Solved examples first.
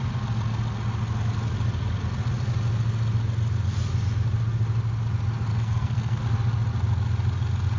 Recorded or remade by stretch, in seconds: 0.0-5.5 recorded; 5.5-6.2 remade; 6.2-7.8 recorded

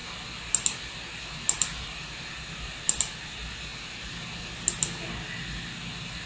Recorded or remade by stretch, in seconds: 0.0-6.3 recorded

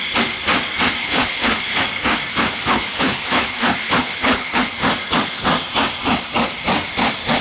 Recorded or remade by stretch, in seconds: 0.0-1.0 recorded; 1.0-1.8 remade; 1.8-2.3 recorded; 2.3-4.6 remade; 4.6-7.4 recorded

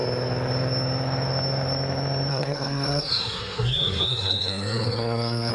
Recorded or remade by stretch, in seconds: 0.0-2.3 recorded; 2.3-5.5 remade